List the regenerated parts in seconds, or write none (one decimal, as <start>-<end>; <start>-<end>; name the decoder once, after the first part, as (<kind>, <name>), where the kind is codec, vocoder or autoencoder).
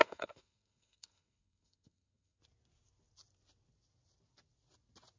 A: 0.0-2.4 (codec, SNAC)